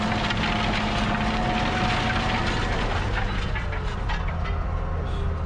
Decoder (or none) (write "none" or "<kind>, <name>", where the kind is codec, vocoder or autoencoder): none